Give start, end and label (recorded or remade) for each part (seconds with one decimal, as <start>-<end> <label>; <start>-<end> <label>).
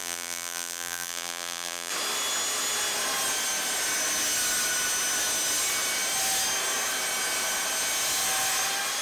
0.0-1.9 remade; 1.9-9.0 recorded